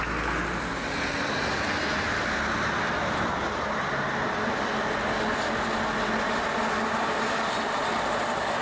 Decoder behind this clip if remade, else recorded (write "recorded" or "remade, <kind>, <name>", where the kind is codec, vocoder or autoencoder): recorded